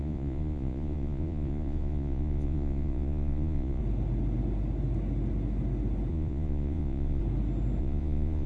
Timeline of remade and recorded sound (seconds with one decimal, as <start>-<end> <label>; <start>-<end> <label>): 0.0-3.8 remade; 3.8-6.1 recorded; 6.1-7.2 remade; 7.2-7.8 recorded; 7.8-8.5 remade